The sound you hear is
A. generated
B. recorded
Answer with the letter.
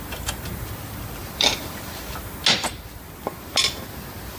B